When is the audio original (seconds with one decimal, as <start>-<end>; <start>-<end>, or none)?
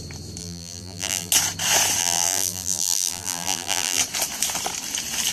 0.0-0.4; 1.3-2.0; 4.0-5.3